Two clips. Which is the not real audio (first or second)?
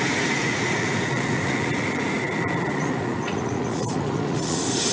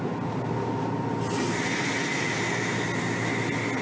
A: first